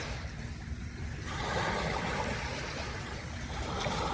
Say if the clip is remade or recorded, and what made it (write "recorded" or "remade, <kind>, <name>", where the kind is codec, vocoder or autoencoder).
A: recorded